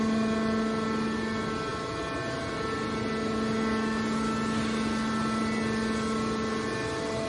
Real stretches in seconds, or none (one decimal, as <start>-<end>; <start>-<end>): 0.0-7.3

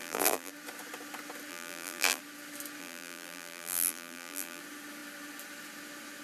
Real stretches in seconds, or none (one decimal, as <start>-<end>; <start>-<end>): 0.5-1.5; 2.2-2.8; 4.6-6.2

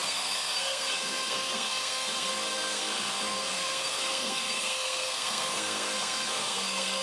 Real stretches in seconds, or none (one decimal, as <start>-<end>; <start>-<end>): none

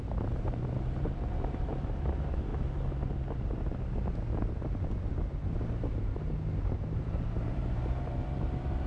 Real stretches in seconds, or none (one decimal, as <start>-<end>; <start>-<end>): 2.5-6.6